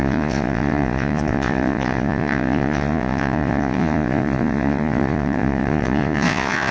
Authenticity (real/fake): fake